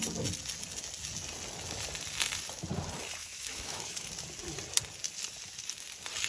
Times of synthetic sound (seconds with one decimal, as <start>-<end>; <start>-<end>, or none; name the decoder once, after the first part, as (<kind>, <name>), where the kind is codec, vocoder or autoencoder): 3.2-4.1 (autoencoder, DAC-VAE)